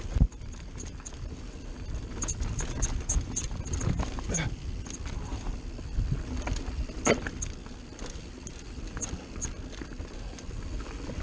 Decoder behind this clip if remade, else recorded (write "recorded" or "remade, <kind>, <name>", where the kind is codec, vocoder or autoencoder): recorded